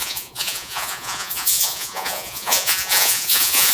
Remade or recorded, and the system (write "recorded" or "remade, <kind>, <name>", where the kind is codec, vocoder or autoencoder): remade, vocoder, Vocos